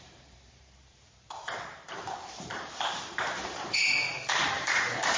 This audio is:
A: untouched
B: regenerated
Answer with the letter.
B